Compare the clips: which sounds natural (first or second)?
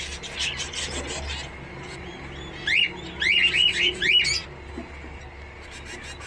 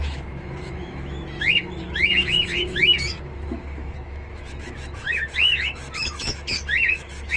first